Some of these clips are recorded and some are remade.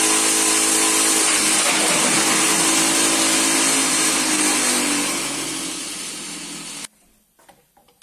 recorded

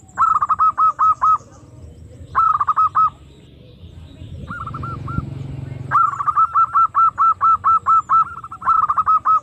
recorded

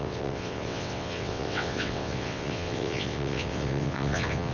remade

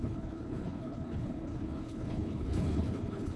remade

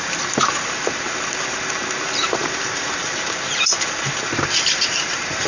remade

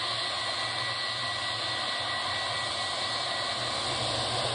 recorded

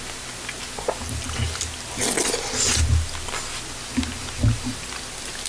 recorded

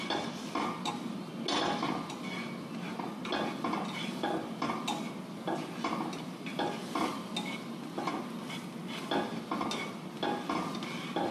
recorded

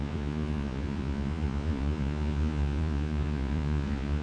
remade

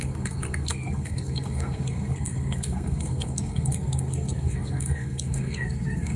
remade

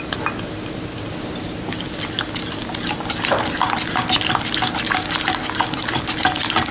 recorded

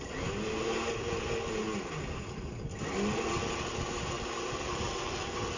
recorded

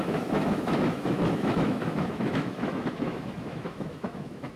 remade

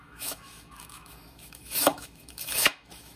remade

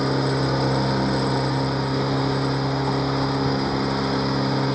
recorded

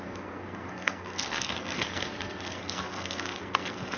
remade